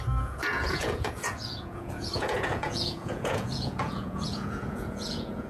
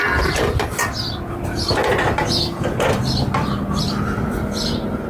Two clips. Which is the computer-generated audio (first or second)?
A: first